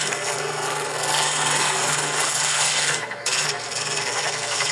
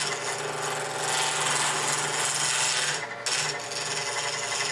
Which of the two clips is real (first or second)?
second